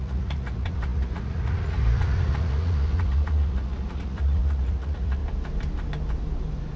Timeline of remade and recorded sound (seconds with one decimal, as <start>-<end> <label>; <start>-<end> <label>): 0.0-5.2 remade; 5.2-6.8 recorded